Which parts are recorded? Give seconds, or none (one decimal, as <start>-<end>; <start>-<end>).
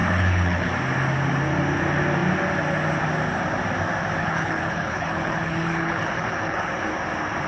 0.7-4.2; 6.9-7.5